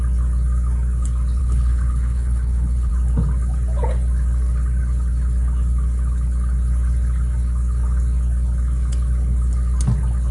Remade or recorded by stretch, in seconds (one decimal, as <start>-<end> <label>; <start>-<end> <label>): 0.0-1.4 recorded; 1.4-2.9 remade; 2.9-10.3 recorded